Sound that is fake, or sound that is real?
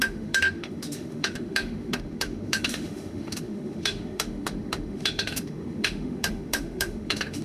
fake